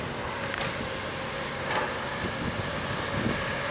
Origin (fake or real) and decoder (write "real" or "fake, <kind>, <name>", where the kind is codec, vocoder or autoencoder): real